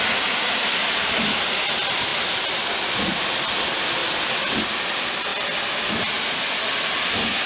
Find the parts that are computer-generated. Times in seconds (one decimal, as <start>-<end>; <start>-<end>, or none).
none